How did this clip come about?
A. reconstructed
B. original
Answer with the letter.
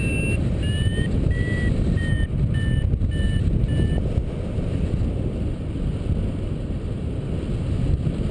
B